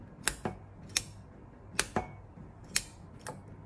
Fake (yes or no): no